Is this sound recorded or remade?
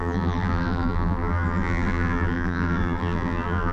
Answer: remade